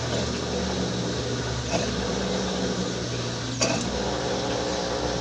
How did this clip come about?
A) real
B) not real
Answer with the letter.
A